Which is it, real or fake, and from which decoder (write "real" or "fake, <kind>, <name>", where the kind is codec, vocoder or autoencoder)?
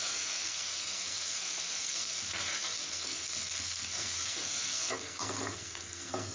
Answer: fake, codec, SNAC